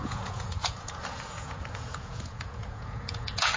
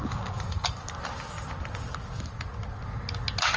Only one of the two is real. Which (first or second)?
second